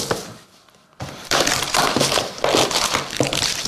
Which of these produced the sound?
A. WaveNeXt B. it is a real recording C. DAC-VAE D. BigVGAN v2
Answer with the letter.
D